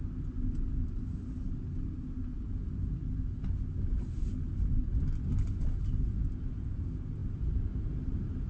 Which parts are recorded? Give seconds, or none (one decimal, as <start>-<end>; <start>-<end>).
0.0-8.5